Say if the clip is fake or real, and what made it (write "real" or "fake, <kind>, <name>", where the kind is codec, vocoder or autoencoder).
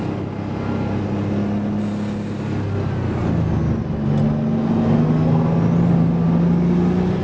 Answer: real